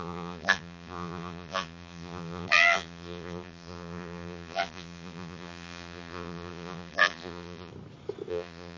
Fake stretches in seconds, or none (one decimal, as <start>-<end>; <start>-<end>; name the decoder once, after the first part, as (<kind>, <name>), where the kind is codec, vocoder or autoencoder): 0.0-7.7 (vocoder, BigVGAN v2); 8.3-8.8